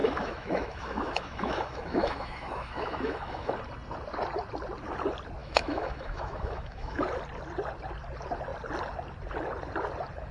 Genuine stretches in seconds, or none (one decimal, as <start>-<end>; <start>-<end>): 3.5-5.4; 7.0-10.3